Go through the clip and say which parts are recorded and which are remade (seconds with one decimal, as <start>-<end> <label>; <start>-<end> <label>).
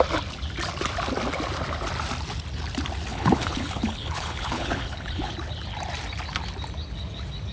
0.0-3.1 recorded; 3.1-5.3 remade; 5.3-7.5 recorded